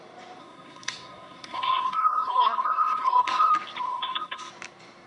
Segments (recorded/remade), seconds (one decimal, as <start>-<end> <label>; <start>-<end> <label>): 0.0-0.4 recorded; 0.4-3.5 remade; 3.5-3.9 recorded; 3.9-4.5 remade; 4.5-5.1 recorded